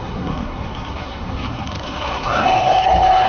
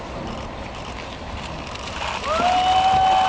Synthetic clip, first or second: first